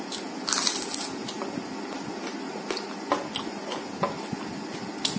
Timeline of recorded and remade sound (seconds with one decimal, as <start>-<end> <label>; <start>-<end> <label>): 0.0-5.2 recorded